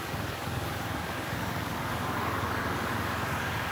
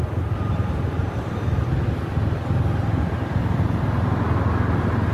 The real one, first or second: second